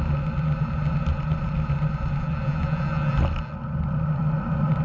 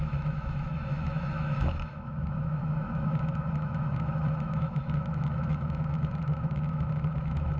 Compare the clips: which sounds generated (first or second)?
second